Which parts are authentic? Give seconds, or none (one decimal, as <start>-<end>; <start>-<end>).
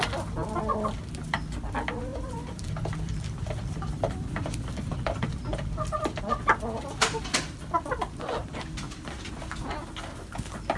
0.0-2.1; 6.2-8.4; 9.3-10.8